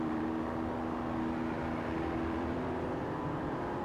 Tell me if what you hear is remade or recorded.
remade